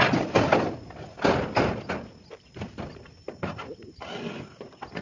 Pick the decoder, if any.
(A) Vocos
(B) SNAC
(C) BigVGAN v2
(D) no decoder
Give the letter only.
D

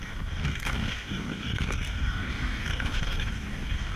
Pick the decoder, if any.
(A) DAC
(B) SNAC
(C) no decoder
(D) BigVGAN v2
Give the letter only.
A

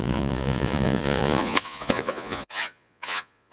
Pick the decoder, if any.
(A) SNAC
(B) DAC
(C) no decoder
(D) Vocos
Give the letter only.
D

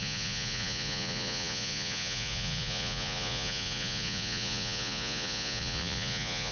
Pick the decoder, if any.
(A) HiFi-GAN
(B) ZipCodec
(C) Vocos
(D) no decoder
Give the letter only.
C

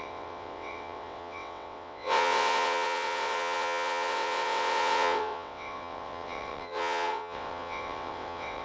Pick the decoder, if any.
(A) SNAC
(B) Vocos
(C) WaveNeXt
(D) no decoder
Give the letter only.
C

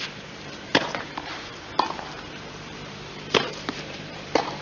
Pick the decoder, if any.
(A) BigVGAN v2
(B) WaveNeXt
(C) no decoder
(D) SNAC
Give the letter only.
A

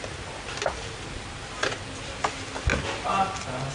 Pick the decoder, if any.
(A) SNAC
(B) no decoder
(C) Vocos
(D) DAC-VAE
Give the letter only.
B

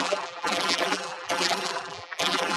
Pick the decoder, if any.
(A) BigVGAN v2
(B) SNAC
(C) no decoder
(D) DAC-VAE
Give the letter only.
A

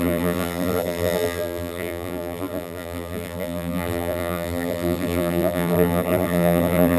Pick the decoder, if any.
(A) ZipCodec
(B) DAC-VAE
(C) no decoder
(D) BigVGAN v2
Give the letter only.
D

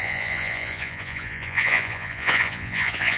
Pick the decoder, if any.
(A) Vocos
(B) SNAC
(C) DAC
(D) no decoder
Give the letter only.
A